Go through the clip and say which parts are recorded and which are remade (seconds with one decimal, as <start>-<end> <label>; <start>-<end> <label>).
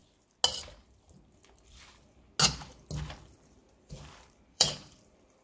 0.0-3.6 recorded; 3.6-5.0 remade; 5.0-5.4 recorded